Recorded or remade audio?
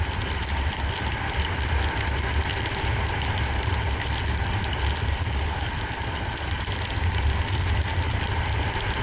recorded